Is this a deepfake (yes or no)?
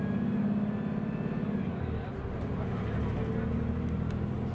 no